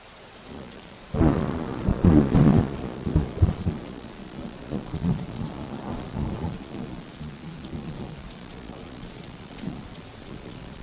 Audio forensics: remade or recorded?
remade